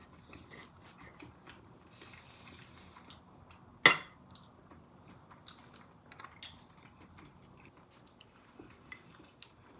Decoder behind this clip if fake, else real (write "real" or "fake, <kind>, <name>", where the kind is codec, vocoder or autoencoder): real